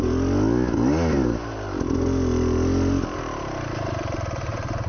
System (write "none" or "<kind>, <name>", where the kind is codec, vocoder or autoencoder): none